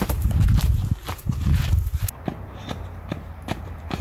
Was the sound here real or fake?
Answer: fake